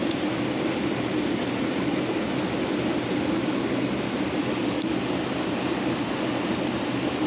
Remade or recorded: recorded